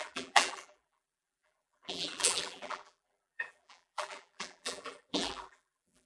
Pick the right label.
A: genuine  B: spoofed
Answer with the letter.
B